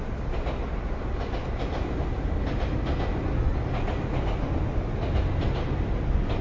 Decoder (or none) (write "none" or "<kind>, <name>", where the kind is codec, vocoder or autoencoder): none